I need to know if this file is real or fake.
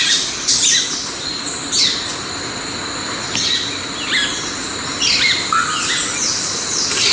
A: real